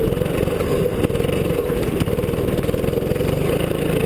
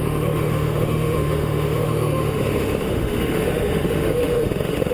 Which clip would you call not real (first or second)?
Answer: second